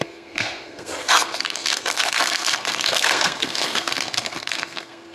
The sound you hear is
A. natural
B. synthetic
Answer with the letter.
B